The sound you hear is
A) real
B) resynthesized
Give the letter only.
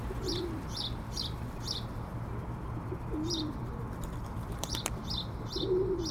B